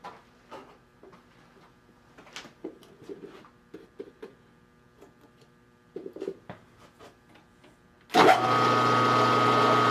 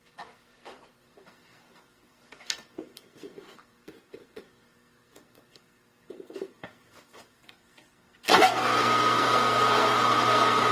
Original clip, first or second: first